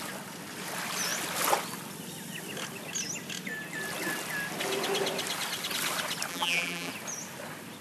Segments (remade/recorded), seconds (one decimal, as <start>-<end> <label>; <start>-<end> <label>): 0.0-6.3 recorded; 6.3-6.9 remade; 6.9-7.8 recorded

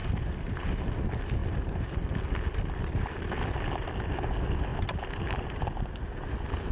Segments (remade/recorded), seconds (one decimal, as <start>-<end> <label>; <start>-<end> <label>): 0.0-1.4 recorded; 1.4-2.0 remade; 2.0-4.7 recorded; 4.7-5.6 remade; 5.6-6.7 recorded

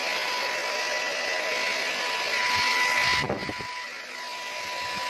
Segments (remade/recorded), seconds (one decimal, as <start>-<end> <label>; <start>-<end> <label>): 0.0-5.1 recorded

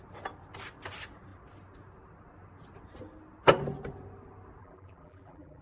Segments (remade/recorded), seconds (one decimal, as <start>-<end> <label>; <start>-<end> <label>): 0.0-4.6 recorded; 4.6-5.6 remade

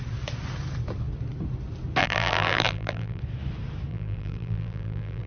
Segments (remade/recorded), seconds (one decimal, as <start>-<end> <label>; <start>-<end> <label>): 0.0-2.0 recorded; 2.0-3.2 remade; 3.2-3.9 recorded; 3.9-5.3 remade

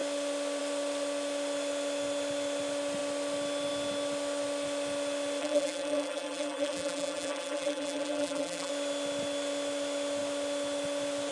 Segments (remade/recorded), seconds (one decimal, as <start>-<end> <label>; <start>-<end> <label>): 0.0-5.4 recorded; 5.4-8.7 remade; 8.7-11.3 recorded

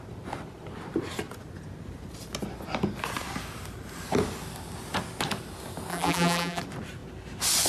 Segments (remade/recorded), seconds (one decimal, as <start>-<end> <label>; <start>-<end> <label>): 0.0-5.9 recorded; 5.9-6.6 remade; 6.6-7.7 recorded